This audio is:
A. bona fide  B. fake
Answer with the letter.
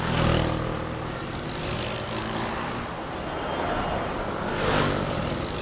A